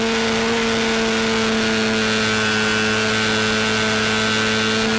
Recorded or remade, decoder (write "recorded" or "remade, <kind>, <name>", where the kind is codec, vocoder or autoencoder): recorded